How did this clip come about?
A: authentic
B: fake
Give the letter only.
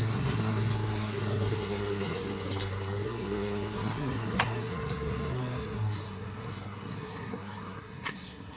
B